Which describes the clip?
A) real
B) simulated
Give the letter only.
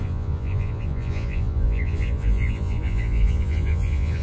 B